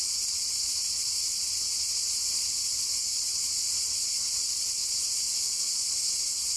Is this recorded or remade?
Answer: recorded